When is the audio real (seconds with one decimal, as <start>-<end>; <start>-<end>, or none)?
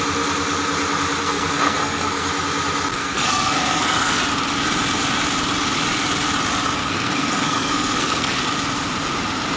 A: 0.0-1.2; 2.3-2.9; 4.2-6.8; 8.4-9.6